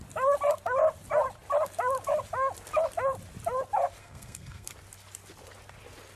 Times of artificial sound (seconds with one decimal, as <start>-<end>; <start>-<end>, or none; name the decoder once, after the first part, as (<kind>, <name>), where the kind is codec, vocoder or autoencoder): 4.0-4.7 (codec, SNAC)